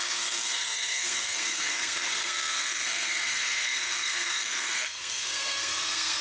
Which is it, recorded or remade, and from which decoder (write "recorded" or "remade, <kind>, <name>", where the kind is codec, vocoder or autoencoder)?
remade, codec, SNAC